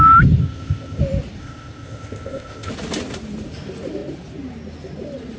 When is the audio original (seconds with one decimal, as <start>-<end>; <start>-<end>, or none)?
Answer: 0.0-0.4; 1.0-1.4; 2.7-5.4